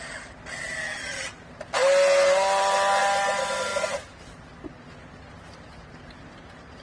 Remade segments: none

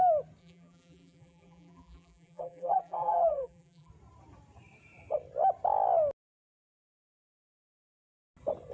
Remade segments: 0.4-3.9

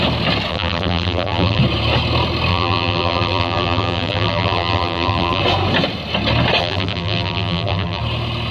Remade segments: 0.5-1.6; 2.5-5.4; 6.6-8.0

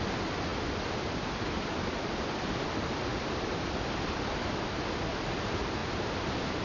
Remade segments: 0.5-4.5; 5.8-6.6

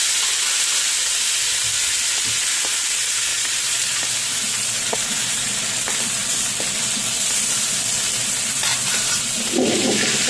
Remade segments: 3.3-4.1; 8.7-9.2

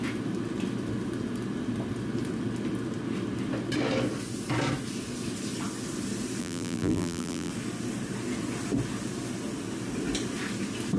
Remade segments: 6.4-7.5